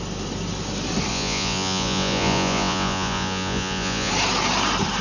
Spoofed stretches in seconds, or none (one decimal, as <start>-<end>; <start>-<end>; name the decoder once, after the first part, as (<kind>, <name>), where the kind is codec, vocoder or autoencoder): 1.1-4.1 (vocoder, Vocos)